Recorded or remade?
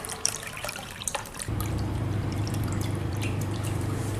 remade